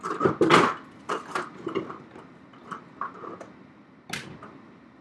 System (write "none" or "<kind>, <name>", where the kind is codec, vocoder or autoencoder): none